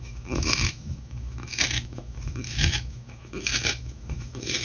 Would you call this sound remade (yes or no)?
yes